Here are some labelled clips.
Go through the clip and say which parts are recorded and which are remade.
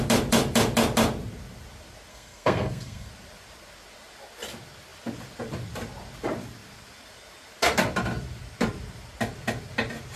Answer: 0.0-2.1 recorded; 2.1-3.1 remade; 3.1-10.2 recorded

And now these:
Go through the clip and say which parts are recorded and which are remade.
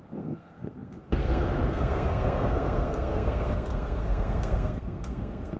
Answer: 0.0-5.6 remade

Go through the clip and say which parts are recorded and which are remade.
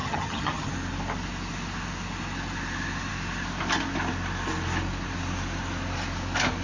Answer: 0.0-0.7 remade; 0.7-6.6 recorded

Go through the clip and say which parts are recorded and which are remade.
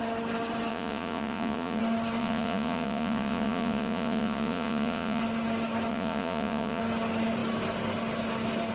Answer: 0.0-0.7 recorded; 0.7-1.8 remade; 1.8-2.2 recorded; 2.2-5.2 remade; 5.2-5.9 recorded; 5.9-6.8 remade; 6.8-8.7 recorded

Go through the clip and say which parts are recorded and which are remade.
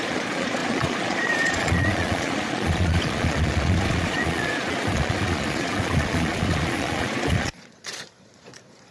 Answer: 0.0-8.9 remade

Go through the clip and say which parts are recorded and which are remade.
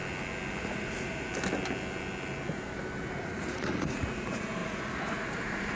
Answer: 0.0-0.6 recorded; 0.6-1.3 remade; 1.3-3.2 recorded; 3.2-5.8 remade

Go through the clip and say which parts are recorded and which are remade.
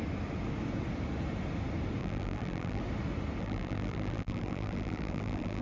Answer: 0.0-2.0 recorded; 2.0-2.8 remade; 2.8-3.4 recorded; 3.4-5.6 remade